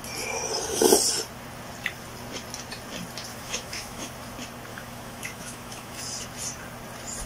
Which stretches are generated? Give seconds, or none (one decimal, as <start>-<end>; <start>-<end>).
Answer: 3.3-4.1; 4.7-6.0